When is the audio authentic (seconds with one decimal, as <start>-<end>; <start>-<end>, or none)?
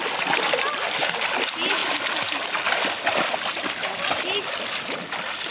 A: 0.0-5.5